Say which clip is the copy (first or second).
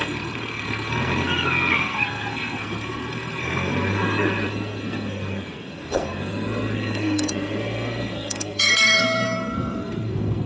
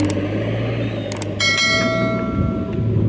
first